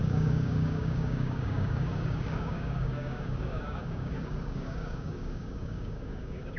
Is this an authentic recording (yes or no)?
no